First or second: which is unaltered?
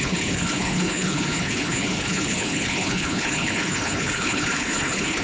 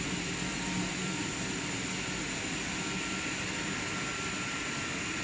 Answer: second